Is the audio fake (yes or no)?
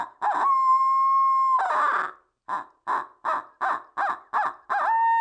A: no